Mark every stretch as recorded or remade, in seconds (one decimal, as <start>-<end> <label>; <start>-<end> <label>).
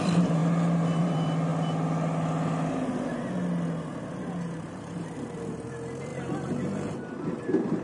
0.0-0.4 remade; 0.4-1.0 recorded; 1.0-1.5 remade; 1.5-4.7 recorded; 4.7-7.8 remade